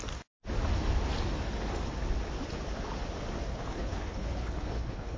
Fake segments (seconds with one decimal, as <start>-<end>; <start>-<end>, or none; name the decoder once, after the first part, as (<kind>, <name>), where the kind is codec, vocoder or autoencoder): 3.5-5.2 (codec, HILCodec)